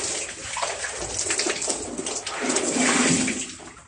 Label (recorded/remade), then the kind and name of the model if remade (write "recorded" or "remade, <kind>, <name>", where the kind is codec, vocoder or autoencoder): recorded